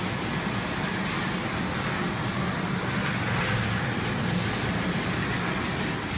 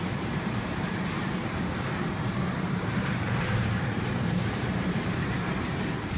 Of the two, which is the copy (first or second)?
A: second